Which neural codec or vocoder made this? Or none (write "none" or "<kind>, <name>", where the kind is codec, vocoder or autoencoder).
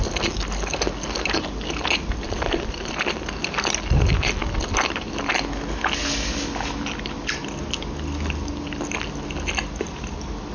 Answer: none